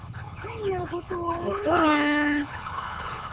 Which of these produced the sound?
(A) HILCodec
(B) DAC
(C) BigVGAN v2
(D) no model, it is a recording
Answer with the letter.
A